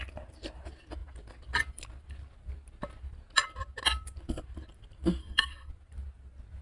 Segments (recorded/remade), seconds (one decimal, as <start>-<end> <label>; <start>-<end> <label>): 0.0-5.2 recorded; 5.2-5.7 remade; 5.7-6.6 recorded